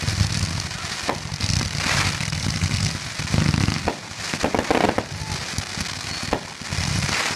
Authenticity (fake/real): real